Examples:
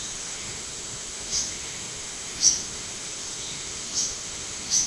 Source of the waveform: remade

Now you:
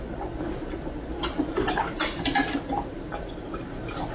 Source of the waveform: recorded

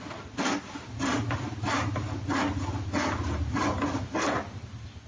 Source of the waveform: recorded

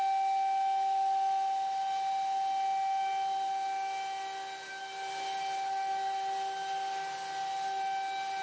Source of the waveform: recorded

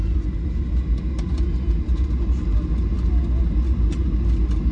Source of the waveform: recorded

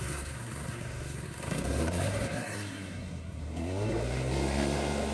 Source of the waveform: remade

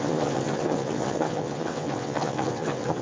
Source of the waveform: remade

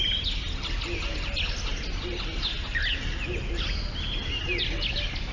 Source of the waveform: recorded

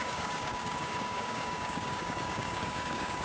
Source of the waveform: remade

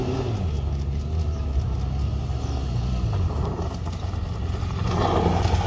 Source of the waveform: recorded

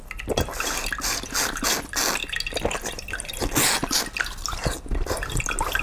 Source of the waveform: recorded